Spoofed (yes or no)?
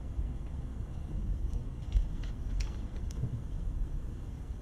yes